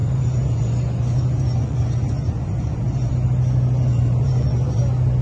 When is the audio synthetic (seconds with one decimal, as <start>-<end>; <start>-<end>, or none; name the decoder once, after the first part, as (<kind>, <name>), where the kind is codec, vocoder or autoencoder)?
0.0-3.1 (vocoder, Vocos); 3.9-4.8